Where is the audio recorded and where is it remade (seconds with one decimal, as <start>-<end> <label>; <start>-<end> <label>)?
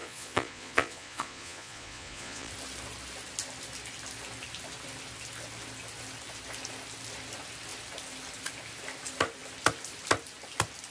0.0-2.5 remade; 2.5-10.9 recorded